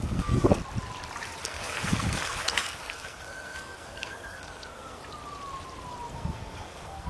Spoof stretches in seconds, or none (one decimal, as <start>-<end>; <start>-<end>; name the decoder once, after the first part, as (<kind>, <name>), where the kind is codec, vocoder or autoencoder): 0.0-0.6 (codec, SNAC); 1.4-5.0; 6.1-7.1